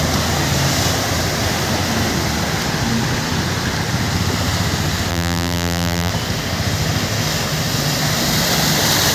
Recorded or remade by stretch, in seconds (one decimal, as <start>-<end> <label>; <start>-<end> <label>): 0.0-5.1 recorded; 5.1-6.1 remade; 6.1-9.1 recorded